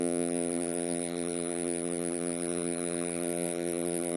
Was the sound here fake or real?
fake